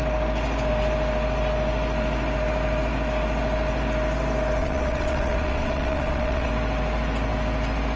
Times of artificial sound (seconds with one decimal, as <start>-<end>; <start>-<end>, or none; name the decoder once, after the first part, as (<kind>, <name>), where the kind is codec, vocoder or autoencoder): 4.6-6.5 (vocoder, WaveNeXt)